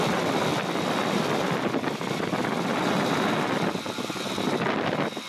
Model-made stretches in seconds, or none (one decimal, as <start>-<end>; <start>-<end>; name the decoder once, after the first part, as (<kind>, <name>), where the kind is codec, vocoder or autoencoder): none